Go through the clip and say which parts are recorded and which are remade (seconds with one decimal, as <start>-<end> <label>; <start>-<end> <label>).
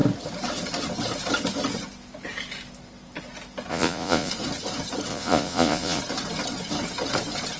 0.0-3.7 recorded; 3.7-4.3 remade; 4.3-5.1 recorded; 5.1-6.0 remade; 6.0-7.6 recorded